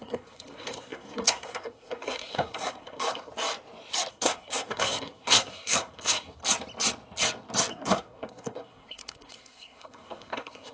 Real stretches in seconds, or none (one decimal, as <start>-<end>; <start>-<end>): 3.3-4.1; 6.4-7.7